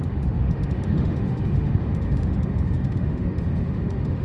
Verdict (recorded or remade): remade